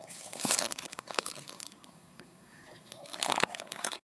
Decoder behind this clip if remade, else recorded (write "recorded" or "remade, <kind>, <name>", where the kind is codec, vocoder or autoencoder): remade, codec, SNAC